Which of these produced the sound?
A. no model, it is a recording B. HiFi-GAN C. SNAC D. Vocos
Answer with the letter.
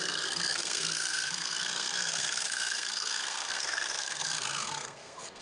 C